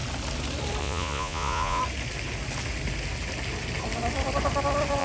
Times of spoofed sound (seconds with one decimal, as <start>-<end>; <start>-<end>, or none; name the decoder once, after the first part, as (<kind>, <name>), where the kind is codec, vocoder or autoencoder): 0.8-1.8 (vocoder, Vocos)